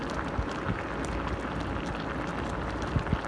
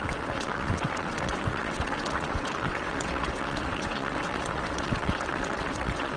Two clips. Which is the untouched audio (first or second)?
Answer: first